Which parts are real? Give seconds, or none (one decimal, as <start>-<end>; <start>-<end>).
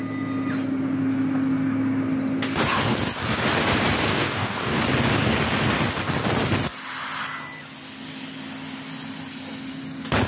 0.0-4.1; 4.8-10.3